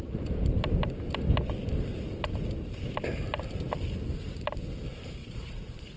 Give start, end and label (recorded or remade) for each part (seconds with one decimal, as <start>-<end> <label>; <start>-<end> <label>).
0.0-5.2 recorded; 5.2-6.0 remade